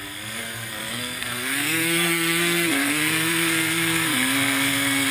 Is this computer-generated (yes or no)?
yes